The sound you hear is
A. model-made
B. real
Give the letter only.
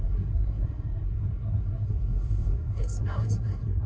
A